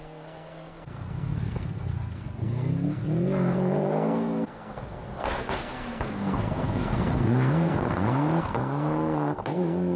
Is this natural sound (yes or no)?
no